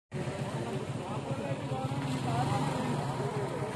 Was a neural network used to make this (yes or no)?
no